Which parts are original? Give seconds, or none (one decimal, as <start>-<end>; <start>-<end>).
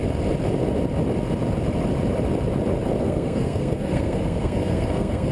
0.0-3.0